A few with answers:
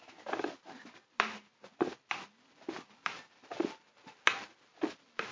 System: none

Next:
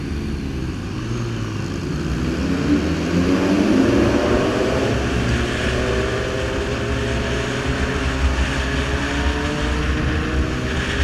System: none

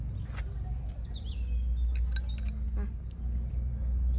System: none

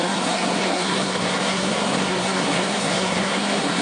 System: codec, SNAC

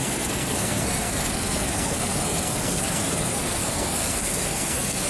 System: codec, SNAC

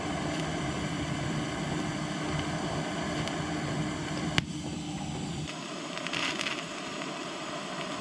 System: none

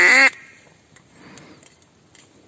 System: none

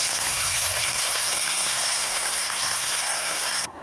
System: codec, SNAC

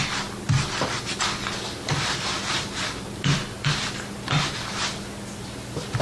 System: none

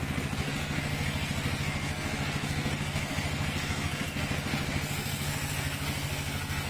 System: codec, SNAC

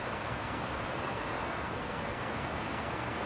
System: codec, SNAC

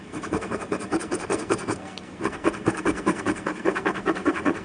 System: codec, SNAC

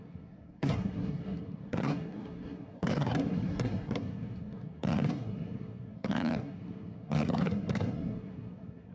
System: codec, SNAC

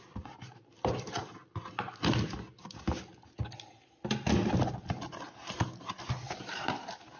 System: none